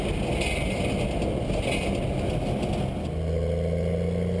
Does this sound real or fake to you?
real